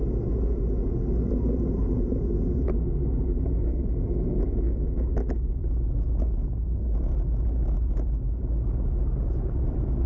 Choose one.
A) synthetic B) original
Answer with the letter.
B